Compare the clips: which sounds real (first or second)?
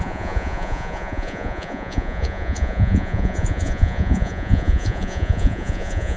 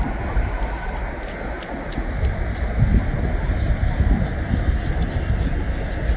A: second